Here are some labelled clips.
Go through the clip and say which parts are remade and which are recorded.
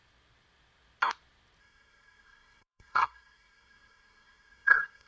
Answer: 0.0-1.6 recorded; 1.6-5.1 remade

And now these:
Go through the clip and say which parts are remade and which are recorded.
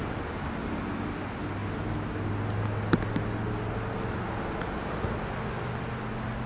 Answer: 0.0-6.5 recorded